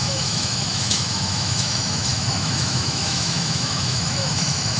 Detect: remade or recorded remade